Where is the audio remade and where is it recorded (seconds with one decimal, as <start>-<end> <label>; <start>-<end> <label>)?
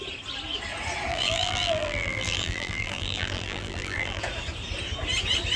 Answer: 0.0-1.1 recorded; 1.1-4.2 remade; 4.2-5.6 recorded